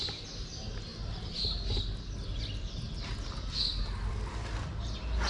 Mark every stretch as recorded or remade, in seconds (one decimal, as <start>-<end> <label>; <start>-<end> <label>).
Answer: 0.0-5.3 recorded